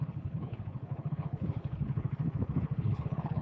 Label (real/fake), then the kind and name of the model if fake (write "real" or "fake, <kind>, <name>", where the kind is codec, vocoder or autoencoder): fake, codec, HILCodec